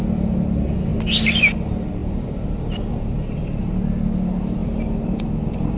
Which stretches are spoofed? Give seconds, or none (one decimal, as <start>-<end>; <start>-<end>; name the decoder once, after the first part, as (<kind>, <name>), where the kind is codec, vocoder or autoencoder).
2.0-3.6 (vocoder, BigVGAN v2); 4.6-5.2